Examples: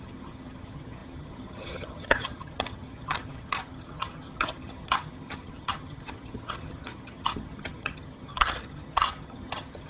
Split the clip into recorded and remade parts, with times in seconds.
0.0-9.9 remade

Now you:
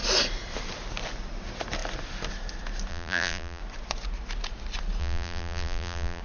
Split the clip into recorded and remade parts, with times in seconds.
0.0-2.9 recorded; 2.9-3.6 remade; 3.6-5.0 recorded; 5.0-6.2 remade

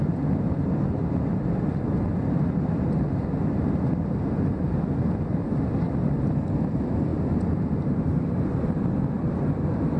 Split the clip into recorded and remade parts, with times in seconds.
0.0-10.0 remade